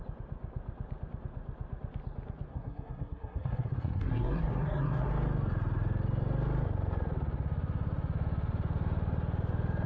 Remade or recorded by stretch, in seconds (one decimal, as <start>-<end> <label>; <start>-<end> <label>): 0.0-2.5 recorded; 2.5-5.1 remade; 5.1-9.9 recorded